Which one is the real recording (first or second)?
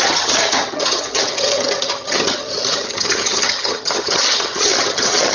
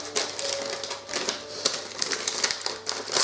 second